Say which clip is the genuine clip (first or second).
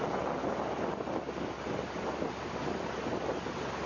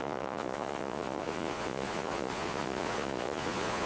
first